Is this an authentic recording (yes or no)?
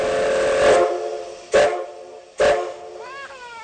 yes